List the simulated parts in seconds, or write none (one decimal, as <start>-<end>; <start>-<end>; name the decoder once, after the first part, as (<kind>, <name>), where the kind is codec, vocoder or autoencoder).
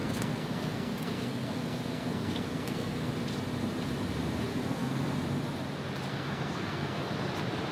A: 0.0-3.1 (codec, SNAC); 4.5-5.1; 6.1-7.1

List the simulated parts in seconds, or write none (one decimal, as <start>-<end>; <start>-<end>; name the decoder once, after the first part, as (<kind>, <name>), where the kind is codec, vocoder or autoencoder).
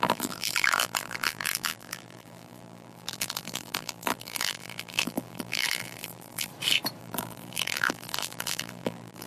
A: 0.0-6.5 (vocoder, BigVGAN v2); 7.0-9.3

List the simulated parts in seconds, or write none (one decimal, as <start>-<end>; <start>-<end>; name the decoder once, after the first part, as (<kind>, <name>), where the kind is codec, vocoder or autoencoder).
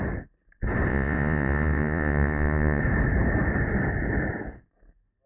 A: 0.9-2.8 (vocoder, Vocos)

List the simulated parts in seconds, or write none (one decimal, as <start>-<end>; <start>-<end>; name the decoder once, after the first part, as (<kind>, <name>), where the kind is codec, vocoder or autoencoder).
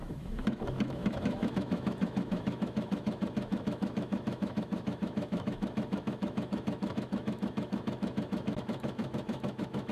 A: 0.0-9.9 (autoencoder, DAC-VAE)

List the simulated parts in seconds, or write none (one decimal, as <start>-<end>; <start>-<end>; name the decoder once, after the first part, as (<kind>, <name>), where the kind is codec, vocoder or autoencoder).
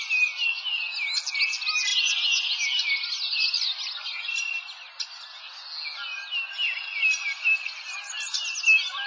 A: none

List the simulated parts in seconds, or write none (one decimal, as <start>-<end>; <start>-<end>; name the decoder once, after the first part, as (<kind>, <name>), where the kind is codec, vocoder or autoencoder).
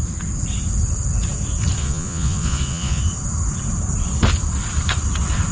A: 1.8-3.0 (vocoder, Vocos)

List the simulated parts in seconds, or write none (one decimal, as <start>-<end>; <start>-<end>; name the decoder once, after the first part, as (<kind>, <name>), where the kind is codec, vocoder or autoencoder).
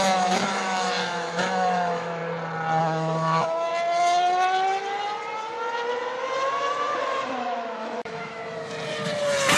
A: 0.0-2.2 (autoencoder, DAC-VAE); 2.8-3.7; 7.4-8.4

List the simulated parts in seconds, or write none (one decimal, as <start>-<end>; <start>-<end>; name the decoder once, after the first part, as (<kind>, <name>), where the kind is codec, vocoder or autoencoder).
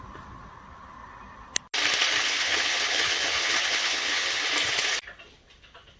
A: 2.2-4.4 (vocoder, HiFi-GAN)